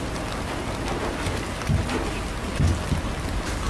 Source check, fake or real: real